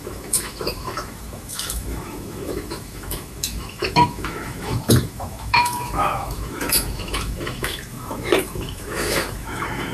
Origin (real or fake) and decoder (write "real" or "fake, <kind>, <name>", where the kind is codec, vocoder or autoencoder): fake, autoencoder, DAC-VAE